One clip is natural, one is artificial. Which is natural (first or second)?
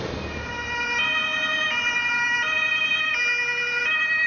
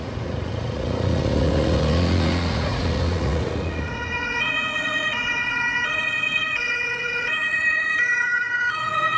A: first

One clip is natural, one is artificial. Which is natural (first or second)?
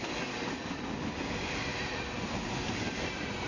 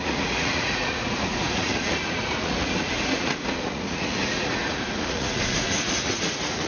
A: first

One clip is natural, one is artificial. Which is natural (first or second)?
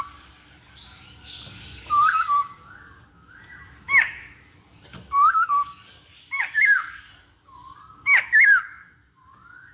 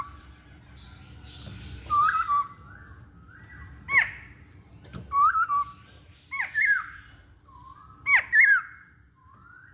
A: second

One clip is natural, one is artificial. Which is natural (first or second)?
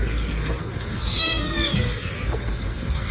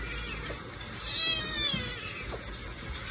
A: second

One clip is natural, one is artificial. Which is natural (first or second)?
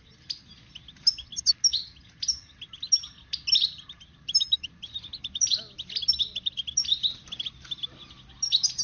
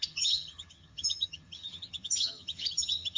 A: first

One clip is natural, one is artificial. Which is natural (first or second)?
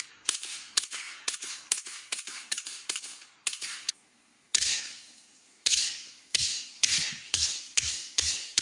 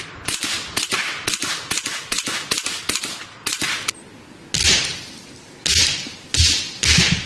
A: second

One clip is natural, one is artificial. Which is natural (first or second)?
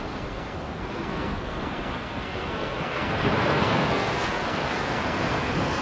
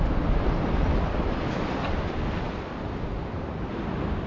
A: second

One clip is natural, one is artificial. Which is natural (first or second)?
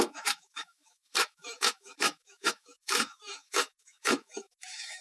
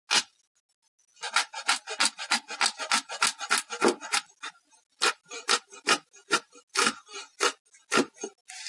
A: second